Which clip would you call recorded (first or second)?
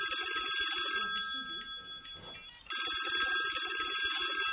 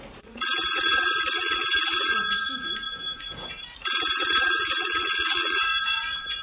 first